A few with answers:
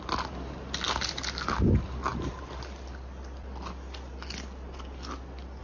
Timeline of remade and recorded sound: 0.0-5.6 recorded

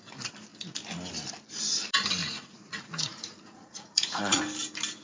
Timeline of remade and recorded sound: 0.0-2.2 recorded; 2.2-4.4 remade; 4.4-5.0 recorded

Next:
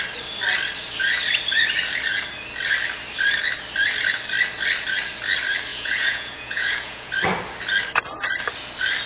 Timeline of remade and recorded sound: 0.0-5.7 recorded; 5.7-7.1 remade; 7.1-9.1 recorded

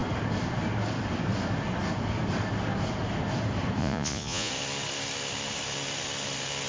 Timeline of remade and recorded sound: 0.0-3.8 recorded; 3.8-4.5 remade; 4.5-6.7 recorded

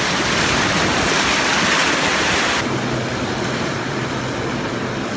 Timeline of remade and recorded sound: 0.0-5.2 recorded

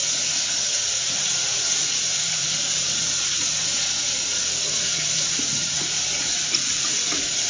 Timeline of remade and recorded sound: 0.0-0.5 recorded; 0.5-7.5 remade

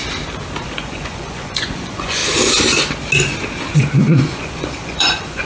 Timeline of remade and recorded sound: 0.0-0.6 recorded; 0.6-2.2 remade; 2.2-3.7 recorded; 3.7-5.5 remade

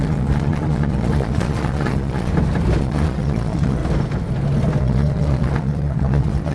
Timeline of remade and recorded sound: 0.0-2.3 remade; 2.3-2.8 recorded; 2.8-3.8 remade; 3.8-4.8 recorded; 4.8-6.5 remade